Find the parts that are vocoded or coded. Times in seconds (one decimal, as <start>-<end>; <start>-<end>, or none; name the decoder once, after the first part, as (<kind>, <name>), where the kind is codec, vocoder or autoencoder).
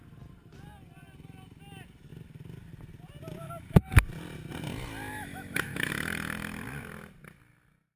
3.4-3.9 (autoencoder, DAC-VAE); 5.1-5.9